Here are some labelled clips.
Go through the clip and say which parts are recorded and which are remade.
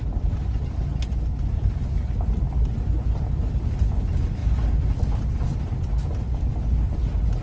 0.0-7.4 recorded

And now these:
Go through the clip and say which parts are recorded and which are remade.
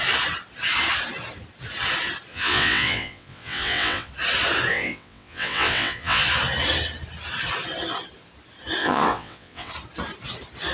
0.0-2.3 recorded; 2.3-4.1 remade; 4.1-4.7 recorded; 4.7-6.2 remade; 6.2-8.8 recorded; 8.8-9.7 remade; 9.7-10.7 recorded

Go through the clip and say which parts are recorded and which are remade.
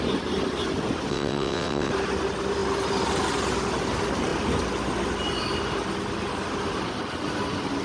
0.0-1.1 recorded; 1.1-1.9 remade; 1.9-7.8 recorded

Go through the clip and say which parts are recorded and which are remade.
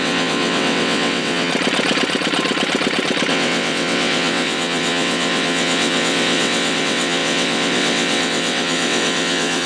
0.0-1.5 remade; 1.5-3.3 recorded; 3.3-9.7 remade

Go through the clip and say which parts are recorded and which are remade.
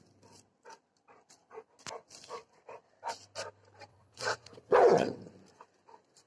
0.0-3.9 recorded; 3.9-5.3 remade; 5.3-6.3 recorded